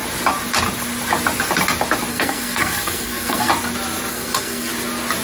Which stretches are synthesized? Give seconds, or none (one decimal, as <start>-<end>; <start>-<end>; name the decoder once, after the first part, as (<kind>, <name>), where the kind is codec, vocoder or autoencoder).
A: 2.1-3.5 (codec, SNAC); 4.1-4.7